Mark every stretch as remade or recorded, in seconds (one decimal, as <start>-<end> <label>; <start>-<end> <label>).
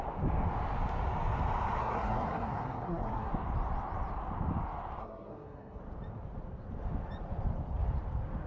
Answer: 0.0-1.8 recorded; 1.8-3.3 remade; 3.3-5.0 recorded; 5.0-5.8 remade; 5.8-8.5 recorded